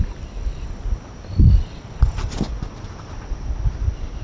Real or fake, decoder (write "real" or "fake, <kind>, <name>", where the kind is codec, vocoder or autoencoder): real